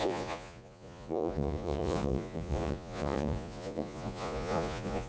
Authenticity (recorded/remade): remade